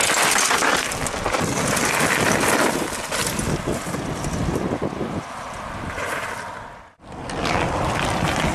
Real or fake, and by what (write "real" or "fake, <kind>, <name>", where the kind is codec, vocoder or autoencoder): real